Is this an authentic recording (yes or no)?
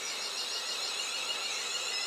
yes